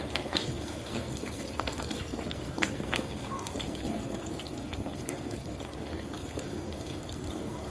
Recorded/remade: remade